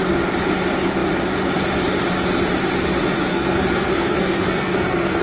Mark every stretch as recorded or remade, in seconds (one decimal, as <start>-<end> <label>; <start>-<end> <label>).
0.0-3.3 recorded; 3.3-5.2 remade